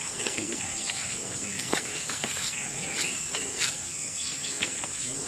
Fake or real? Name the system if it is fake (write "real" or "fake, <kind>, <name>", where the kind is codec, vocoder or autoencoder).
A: fake, codec, SNAC